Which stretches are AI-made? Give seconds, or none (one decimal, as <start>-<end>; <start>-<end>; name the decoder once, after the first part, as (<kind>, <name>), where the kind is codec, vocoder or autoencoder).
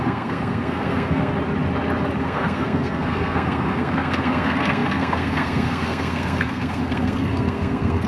0.0-1.3 (codec, SNAC); 2.2-8.1